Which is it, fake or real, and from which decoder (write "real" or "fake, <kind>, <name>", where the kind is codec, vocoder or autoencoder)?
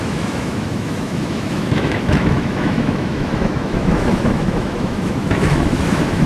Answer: fake, autoencoder, DAC-VAE